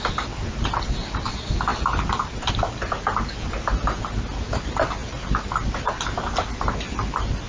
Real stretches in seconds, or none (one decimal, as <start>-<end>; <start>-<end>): 0.0-7.5